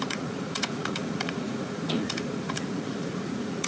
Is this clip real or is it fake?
fake